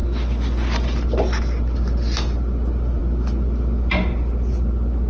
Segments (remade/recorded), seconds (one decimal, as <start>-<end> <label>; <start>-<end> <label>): 0.0-5.1 recorded